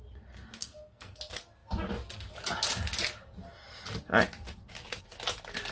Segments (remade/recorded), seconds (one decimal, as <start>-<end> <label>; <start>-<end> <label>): 0.0-0.6 recorded; 0.6-1.2 remade; 1.2-5.7 recorded